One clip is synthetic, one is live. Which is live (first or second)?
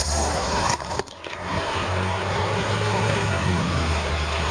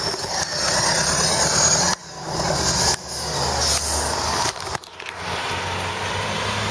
second